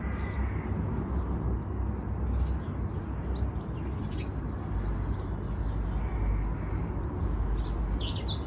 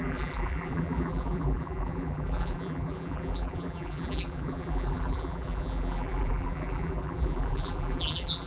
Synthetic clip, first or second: second